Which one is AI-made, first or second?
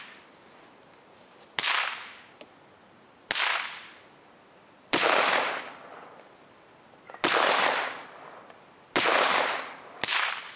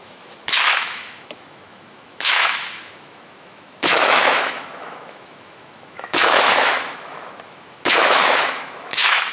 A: second